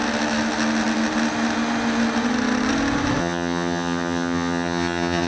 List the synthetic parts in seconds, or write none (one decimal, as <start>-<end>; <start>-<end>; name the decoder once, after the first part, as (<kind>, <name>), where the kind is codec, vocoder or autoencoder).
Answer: 3.2-5.3 (vocoder, HiFi-GAN)